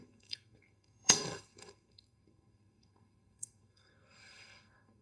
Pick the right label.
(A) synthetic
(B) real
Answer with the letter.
A